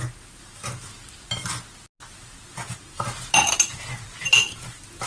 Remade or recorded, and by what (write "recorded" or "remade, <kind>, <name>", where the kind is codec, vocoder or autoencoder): recorded